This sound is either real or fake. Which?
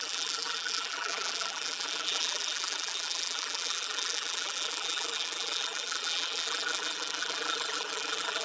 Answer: fake